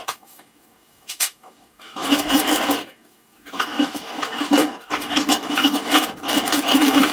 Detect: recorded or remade remade